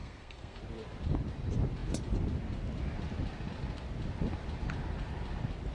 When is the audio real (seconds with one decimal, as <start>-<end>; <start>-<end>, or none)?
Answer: 0.6-5.7